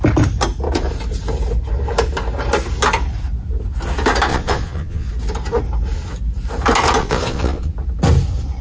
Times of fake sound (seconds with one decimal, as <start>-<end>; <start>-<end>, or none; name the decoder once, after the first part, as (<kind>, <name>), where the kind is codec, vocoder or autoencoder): 4.3-5.1 (vocoder, Vocos); 7.0-7.7